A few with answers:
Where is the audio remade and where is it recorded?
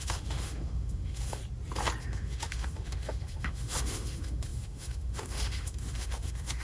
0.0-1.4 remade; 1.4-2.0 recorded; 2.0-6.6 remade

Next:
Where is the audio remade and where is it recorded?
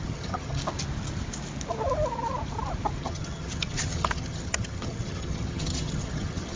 0.0-0.6 remade; 0.6-3.0 recorded; 3.0-6.6 remade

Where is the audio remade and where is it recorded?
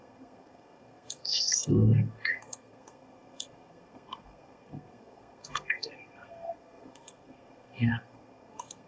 0.0-8.9 remade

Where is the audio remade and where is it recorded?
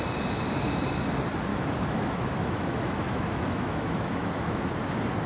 0.0-1.5 recorded; 1.5-4.7 remade; 4.7-5.3 recorded